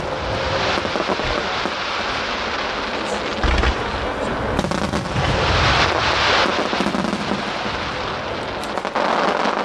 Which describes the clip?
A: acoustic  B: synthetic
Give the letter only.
A